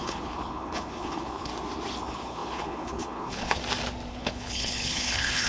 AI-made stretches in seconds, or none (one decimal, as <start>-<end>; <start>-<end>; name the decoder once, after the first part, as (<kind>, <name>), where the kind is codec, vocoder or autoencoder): 0.0-1.5 (codec, HILCodec); 2.0-3.6; 4.1-5.5